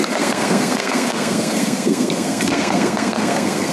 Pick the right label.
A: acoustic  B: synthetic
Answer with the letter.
B